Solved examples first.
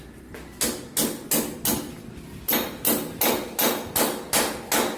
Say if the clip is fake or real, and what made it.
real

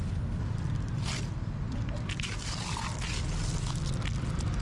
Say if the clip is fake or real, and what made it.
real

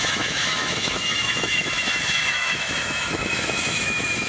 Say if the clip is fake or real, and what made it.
fake, autoencoder, DAC-VAE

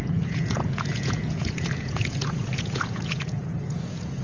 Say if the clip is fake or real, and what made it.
fake, vocoder, Vocos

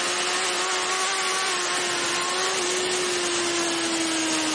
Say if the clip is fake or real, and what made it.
real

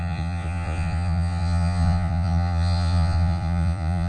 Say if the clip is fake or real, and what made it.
fake, vocoder, Vocos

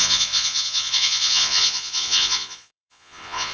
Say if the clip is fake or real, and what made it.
fake, vocoder, Vocos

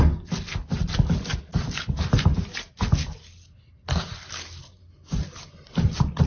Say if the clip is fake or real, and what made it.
real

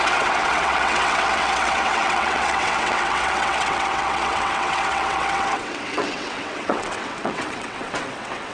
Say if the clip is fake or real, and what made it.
fake, vocoder, WaveNeXt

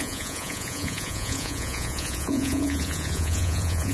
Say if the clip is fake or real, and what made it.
fake, vocoder, Vocos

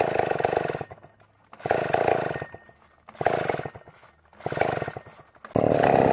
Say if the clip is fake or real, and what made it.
real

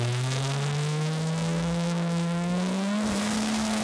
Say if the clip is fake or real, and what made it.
fake, codec, SNAC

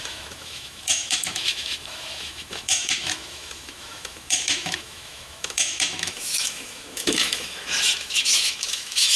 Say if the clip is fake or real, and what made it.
fake, autoencoder, DAC-VAE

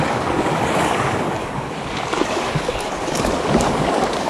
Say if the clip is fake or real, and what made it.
fake, codec, DAC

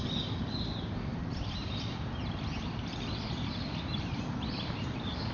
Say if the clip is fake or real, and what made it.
fake, vocoder, BigVGAN v2